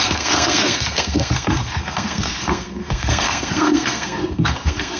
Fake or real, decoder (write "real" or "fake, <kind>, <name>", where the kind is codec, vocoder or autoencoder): fake, codec, SNAC